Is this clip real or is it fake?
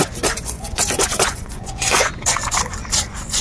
fake